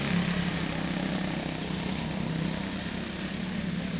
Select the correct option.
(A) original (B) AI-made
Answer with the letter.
A